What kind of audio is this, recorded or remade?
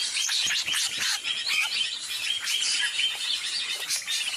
remade